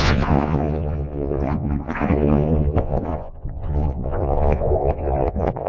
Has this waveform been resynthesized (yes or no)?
yes